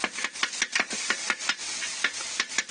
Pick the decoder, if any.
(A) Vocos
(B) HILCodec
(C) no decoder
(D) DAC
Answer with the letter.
C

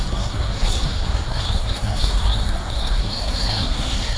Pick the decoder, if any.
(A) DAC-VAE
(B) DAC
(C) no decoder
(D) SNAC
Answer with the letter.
D